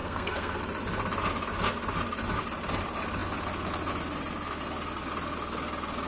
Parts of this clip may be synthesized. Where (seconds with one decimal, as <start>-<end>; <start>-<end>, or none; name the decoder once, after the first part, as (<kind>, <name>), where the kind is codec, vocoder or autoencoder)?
0.0-0.6 (codec, SNAC)